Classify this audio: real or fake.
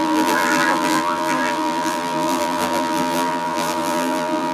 fake